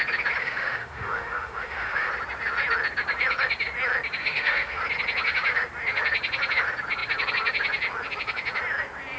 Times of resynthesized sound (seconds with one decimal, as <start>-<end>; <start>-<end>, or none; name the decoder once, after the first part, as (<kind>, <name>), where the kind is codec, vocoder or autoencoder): 0.4-2.1 (autoencoder, DAC-VAE); 4.2-4.8

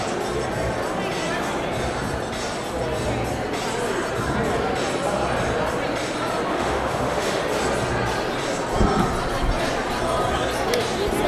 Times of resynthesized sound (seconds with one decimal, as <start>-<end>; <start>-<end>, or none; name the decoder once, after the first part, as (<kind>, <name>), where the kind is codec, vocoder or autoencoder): 6.5-7.4 (autoencoder, DAC-VAE)

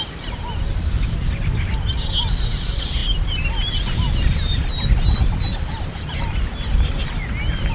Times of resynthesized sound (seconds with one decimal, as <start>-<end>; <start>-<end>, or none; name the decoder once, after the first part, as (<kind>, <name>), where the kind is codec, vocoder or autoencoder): none

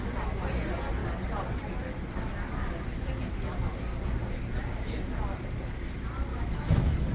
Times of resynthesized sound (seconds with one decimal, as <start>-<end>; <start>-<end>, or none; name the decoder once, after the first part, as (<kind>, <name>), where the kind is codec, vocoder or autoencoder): 6.3-7.1 (autoencoder, DAC-VAE)

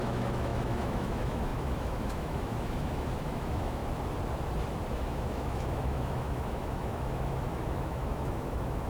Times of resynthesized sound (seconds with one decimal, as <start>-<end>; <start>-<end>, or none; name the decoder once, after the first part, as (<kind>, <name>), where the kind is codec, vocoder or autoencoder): 0.0-3.8 (autoencoder, DAC-VAE); 4.9-8.9

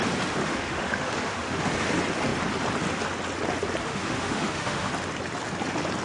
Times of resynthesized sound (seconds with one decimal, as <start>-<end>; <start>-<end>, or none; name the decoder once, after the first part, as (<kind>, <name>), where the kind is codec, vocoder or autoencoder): 0.4-1.7 (autoencoder, DAC-VAE); 3.8-4.9